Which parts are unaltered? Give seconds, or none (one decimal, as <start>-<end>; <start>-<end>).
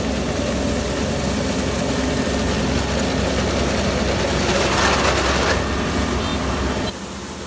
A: 0.0-7.5